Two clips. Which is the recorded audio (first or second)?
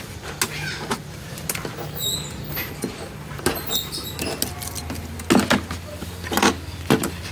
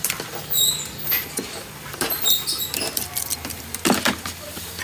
first